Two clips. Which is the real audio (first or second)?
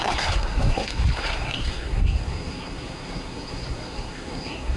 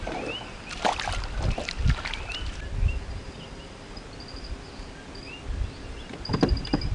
second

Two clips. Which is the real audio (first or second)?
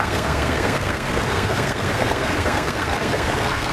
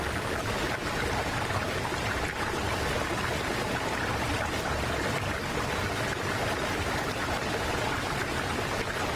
second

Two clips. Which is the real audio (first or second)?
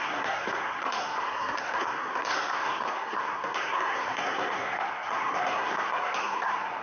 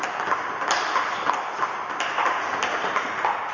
second